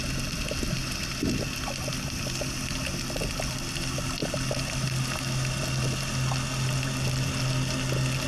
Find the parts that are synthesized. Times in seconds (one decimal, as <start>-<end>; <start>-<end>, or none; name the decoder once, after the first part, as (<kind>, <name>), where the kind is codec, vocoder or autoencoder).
none